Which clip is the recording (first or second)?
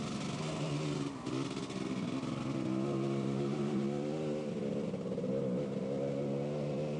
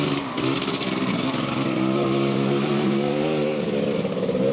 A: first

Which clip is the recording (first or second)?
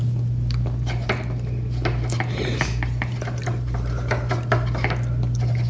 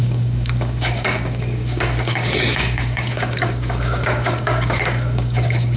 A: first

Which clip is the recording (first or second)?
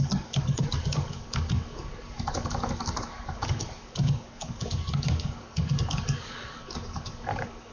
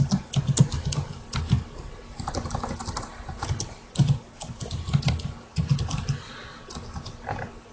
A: second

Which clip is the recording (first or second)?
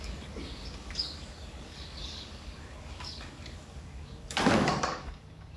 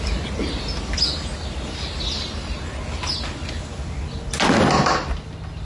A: second